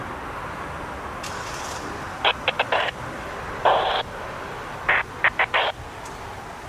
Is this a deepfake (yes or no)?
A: no